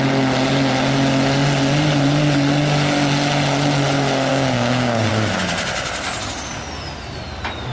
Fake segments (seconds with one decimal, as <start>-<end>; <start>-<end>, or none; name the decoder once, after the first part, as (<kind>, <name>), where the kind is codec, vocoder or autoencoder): 4.3-5.1 (codec, DAC)